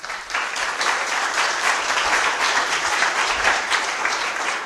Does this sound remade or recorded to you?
remade